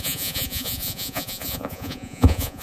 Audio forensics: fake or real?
fake